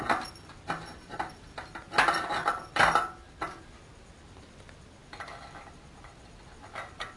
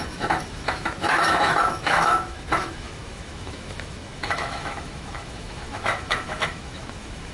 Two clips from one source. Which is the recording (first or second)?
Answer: first